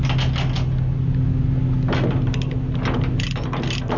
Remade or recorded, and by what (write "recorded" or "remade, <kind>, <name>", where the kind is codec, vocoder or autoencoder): recorded